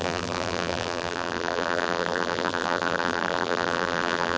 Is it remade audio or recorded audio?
remade